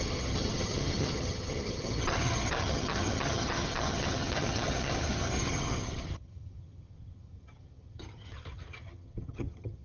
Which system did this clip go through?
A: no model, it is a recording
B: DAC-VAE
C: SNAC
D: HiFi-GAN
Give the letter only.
D